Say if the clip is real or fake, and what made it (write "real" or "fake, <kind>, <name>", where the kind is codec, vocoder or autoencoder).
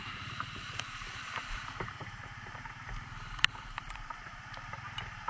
fake, vocoder, BigVGAN v2